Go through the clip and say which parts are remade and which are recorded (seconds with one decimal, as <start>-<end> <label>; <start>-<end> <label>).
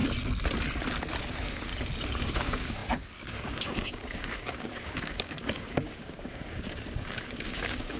0.0-1.2 recorded; 1.2-1.7 remade; 1.7-2.2 recorded; 2.2-8.0 remade